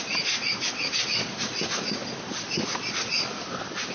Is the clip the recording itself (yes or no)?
yes